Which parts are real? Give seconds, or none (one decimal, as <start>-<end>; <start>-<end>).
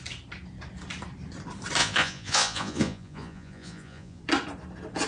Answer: 0.0-1.8; 4.2-5.1